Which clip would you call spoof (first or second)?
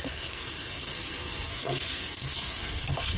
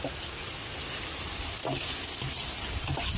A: first